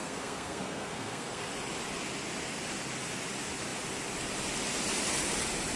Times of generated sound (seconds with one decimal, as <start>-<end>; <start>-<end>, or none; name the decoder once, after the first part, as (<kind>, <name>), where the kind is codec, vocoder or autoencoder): 0.0-1.5 (codec, SNAC)